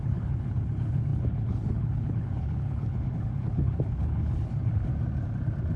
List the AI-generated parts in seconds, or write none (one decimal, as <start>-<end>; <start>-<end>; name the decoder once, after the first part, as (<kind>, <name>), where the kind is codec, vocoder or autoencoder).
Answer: 0.0-4.9 (codec, HILCodec)